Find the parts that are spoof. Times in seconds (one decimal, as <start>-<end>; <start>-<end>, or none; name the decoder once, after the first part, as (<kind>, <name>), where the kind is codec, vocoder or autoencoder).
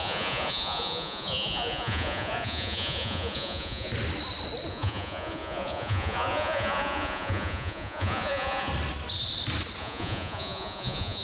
0.0-3.9 (vocoder, Vocos); 4.7-8.7; 9.8-11.2